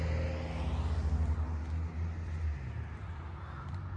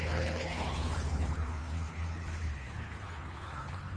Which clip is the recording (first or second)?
first